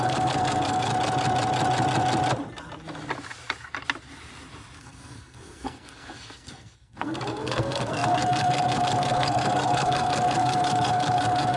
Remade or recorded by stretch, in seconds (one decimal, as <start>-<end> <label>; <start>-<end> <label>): 0.0-0.9 remade; 0.9-4.8 recorded; 4.8-11.6 remade